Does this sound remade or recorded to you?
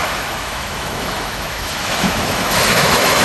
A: remade